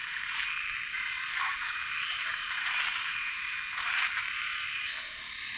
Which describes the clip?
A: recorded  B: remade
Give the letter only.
B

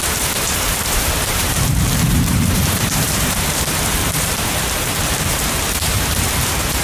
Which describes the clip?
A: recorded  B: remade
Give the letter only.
B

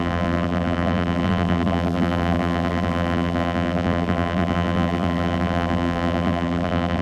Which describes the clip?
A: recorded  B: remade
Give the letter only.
B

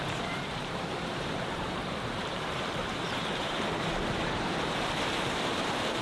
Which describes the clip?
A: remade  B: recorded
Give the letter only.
A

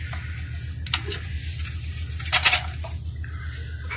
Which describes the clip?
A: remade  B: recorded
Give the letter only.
B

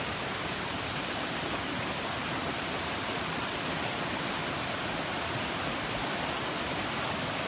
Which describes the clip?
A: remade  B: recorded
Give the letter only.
B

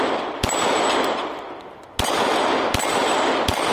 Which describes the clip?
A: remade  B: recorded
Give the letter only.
B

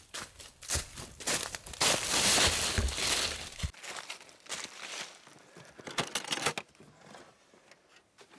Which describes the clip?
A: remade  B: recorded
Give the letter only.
B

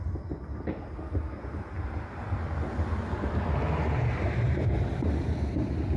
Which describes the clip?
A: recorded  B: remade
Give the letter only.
A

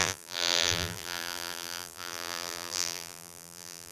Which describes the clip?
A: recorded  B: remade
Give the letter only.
B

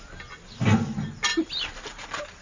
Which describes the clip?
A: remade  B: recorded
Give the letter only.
B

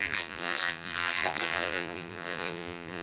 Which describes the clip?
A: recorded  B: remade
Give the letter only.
B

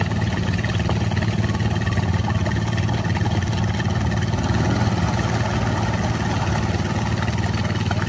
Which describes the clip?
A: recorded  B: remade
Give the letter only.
A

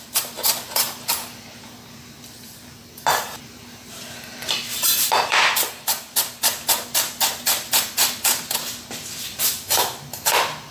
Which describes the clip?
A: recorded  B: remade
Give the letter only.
B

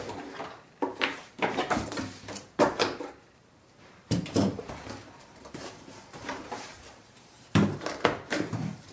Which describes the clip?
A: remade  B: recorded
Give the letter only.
A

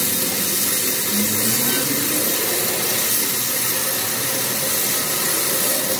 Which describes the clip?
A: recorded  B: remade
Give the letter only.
A